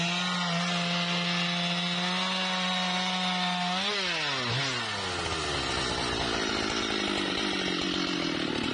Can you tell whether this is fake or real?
real